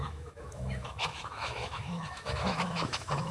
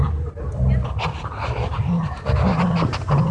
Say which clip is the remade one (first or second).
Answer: first